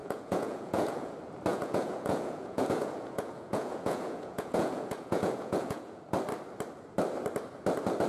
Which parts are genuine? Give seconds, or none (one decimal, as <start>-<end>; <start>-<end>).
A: 1.1-1.5; 6.0-8.1

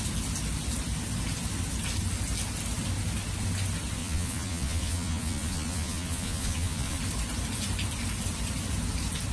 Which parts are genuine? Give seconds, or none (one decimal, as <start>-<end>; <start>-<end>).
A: 0.0-4.0; 7.0-9.3

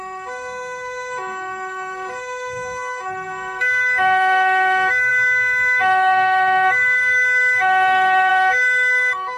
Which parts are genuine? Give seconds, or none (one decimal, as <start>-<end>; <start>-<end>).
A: none

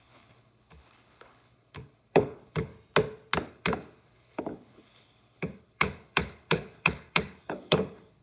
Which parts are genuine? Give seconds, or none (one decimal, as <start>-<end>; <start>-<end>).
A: 2.7-3.5

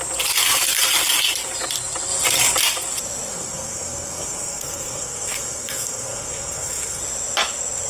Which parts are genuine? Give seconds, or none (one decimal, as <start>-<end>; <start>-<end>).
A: 0.0-3.3; 7.0-7.9

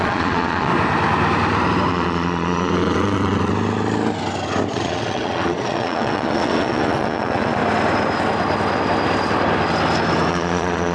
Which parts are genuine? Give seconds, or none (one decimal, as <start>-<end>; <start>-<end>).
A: 0.7-1.9; 3.5-4.7; 7.6-10.3